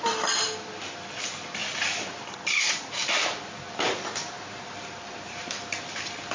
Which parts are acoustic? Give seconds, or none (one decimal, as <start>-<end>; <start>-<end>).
0.0-6.3

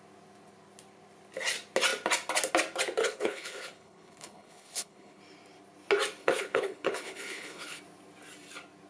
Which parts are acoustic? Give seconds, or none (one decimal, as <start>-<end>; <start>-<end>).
0.0-3.0; 5.2-6.2; 7.8-8.9

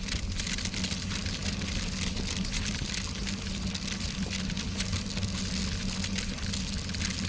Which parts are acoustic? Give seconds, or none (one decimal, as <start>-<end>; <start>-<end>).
0.0-7.3

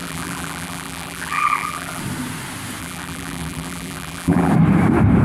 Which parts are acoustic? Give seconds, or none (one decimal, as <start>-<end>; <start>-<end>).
2.0-2.8; 4.5-5.2

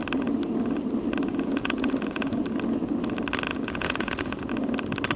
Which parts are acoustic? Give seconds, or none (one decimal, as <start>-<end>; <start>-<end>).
0.0-1.3; 2.4-3.5; 4.5-5.2

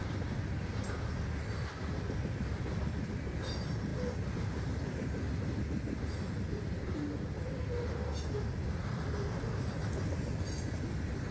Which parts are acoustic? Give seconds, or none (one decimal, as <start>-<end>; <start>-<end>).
0.0-11.3

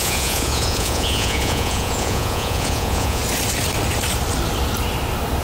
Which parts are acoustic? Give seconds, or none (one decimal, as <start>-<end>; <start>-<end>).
3.2-5.4

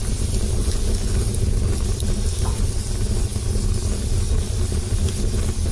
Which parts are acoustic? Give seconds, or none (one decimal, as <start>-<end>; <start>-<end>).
0.0-0.6; 1.2-5.7